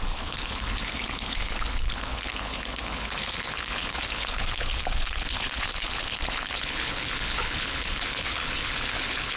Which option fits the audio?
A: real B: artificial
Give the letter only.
B